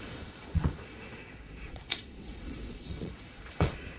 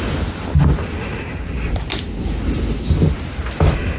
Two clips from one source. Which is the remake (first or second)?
first